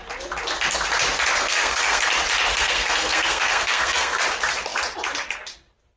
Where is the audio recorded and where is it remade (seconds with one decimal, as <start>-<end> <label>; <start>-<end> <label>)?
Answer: 0.0-1.4 recorded; 1.4-2.0 remade; 2.0-2.6 recorded; 2.6-4.2 remade; 4.2-6.0 recorded